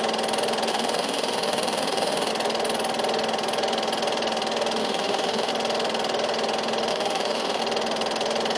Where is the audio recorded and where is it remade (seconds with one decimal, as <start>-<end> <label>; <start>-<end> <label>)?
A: 0.0-0.7 recorded; 0.7-2.3 remade; 2.3-4.8 recorded; 4.8-5.5 remade; 5.5-6.9 recorded; 6.9-7.6 remade; 7.6-8.6 recorded